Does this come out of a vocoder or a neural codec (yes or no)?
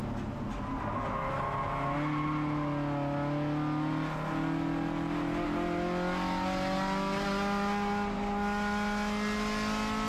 no